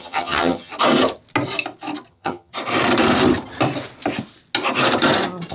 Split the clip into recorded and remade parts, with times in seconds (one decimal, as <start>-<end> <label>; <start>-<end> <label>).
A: 0.0-0.7 remade; 0.7-2.1 recorded; 2.1-2.5 remade; 2.5-5.5 recorded